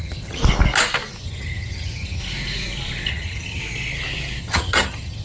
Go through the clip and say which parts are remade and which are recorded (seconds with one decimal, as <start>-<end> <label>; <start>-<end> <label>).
0.0-0.4 remade; 0.4-1.2 recorded; 1.2-2.2 remade; 2.2-3.1 recorded; 3.1-3.6 remade; 3.6-4.4 recorded; 4.4-5.2 remade